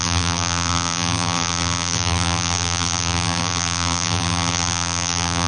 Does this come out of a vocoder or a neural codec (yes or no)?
yes